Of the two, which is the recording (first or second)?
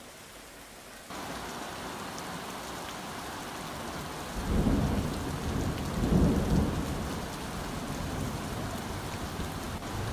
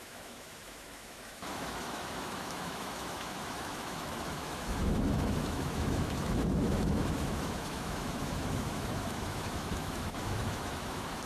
first